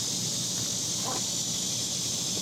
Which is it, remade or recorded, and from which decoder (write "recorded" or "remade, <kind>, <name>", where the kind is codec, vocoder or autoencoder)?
recorded